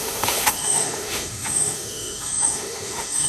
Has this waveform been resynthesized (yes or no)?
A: yes